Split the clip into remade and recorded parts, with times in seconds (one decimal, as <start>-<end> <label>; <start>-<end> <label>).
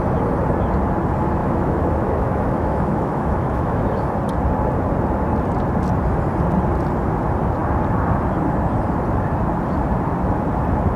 0.0-1.4 recorded; 1.4-4.1 remade; 4.1-11.0 recorded